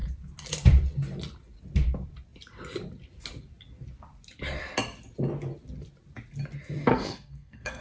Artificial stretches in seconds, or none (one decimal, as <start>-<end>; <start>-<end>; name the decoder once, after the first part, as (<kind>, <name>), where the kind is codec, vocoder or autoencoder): 6.9-7.8 (codec, SNAC)